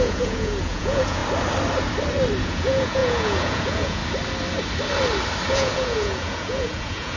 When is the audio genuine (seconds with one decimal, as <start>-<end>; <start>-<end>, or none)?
1.2-2.4; 4.0-5.5